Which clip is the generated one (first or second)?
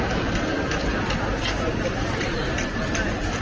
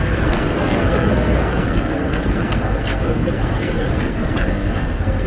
second